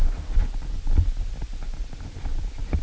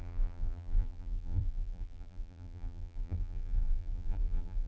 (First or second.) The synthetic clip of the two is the second